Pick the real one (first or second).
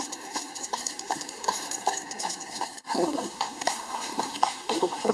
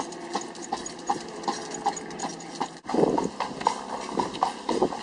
second